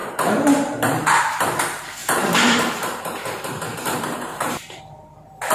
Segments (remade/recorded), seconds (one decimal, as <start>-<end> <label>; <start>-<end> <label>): 0.0-1.2 remade; 1.2-2.0 recorded; 2.0-4.8 remade; 4.8-5.5 recorded